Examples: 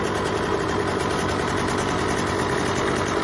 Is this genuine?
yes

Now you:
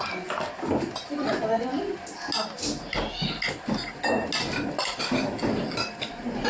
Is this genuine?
yes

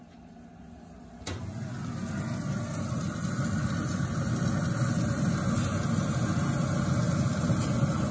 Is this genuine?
yes